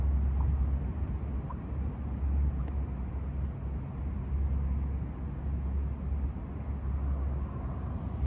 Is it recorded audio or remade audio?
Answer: recorded